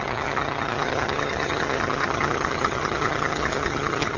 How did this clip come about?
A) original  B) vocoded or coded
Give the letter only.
B